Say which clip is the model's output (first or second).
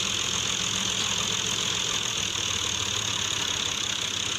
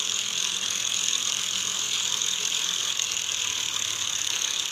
second